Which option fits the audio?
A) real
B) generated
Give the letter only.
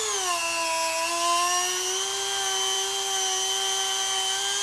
A